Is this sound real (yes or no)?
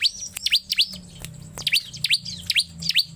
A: yes